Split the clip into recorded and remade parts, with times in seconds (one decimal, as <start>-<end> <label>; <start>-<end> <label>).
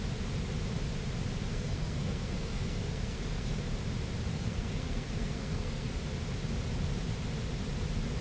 0.0-1.5 recorded; 1.5-3.6 remade; 3.6-4.3 recorded; 4.3-5.9 remade; 5.9-8.2 recorded